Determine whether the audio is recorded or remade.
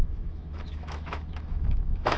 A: remade